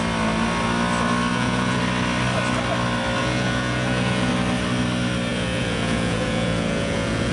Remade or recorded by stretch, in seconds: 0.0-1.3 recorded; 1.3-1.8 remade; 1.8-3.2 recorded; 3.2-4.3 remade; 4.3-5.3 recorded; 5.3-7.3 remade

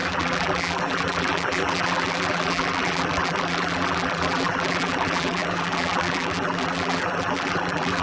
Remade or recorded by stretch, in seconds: 0.0-8.0 remade

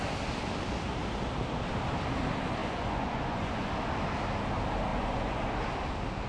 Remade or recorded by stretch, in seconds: 0.0-2.6 recorded; 2.6-3.7 remade; 3.7-4.9 recorded; 4.9-5.6 remade; 5.6-6.3 recorded

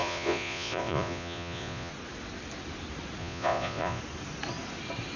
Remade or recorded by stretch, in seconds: 0.0-1.9 remade; 1.9-3.2 recorded; 3.2-4.0 remade; 4.0-5.2 recorded